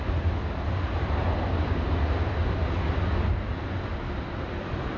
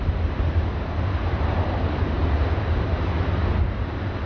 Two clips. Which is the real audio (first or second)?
first